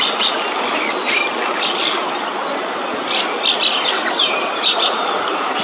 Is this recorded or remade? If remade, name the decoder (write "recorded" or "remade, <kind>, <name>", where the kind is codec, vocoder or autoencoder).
recorded